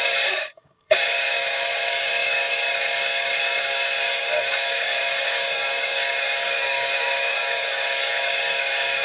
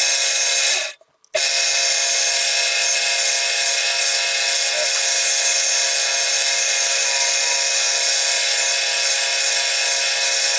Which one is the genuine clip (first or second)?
second